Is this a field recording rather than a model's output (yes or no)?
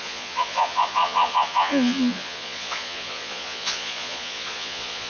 no